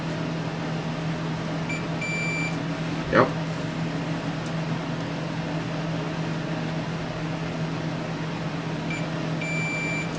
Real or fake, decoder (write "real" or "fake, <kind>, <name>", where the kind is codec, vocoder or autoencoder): real